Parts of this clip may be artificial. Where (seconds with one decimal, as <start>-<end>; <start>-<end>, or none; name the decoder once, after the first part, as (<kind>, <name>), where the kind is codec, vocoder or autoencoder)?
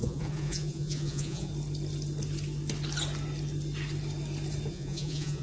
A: 0.0-1.5 (vocoder, Vocos); 4.7-5.4